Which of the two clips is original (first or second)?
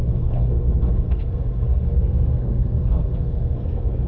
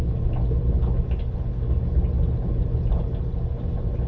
second